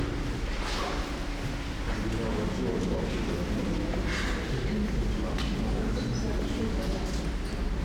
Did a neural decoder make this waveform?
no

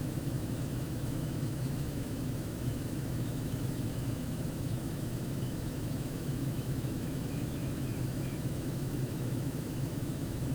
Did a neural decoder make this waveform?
yes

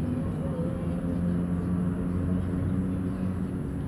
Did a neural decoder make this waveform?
no